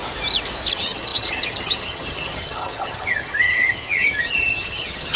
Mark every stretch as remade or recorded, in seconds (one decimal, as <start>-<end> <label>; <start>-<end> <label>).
0.0-0.7 recorded; 0.7-5.2 remade